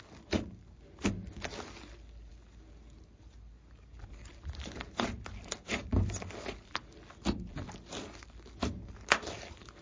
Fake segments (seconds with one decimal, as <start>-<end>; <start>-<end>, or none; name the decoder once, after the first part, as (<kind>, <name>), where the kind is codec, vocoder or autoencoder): none